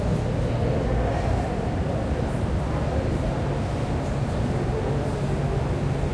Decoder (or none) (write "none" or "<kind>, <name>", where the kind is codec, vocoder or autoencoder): none